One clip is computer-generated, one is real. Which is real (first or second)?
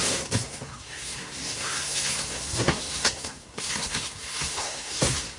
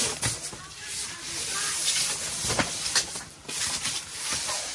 second